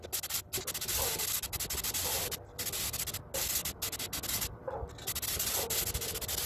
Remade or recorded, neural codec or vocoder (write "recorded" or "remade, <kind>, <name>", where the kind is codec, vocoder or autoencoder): recorded